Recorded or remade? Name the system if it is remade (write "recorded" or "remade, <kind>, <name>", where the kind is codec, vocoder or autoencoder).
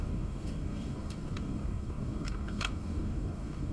remade, codec, DAC